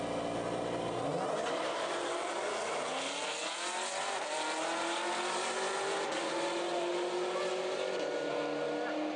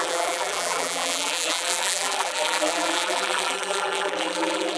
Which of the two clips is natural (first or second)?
first